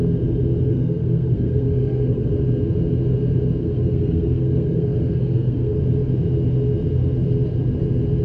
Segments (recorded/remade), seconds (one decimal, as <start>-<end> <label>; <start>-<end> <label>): 0.0-0.7 recorded; 0.7-2.3 remade; 2.3-3.6 recorded; 3.6-5.8 remade; 5.8-8.2 recorded